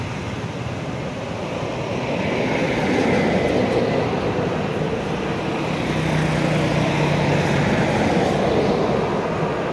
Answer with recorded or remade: recorded